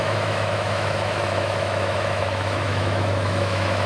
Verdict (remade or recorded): remade